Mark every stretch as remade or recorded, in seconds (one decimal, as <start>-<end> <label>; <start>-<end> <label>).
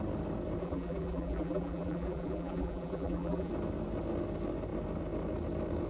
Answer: 0.0-0.6 recorded; 0.6-3.5 remade; 3.5-5.9 recorded